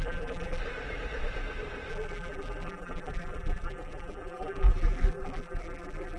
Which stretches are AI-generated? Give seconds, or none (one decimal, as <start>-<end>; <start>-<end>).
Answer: 0.0-0.6; 1.9-6.2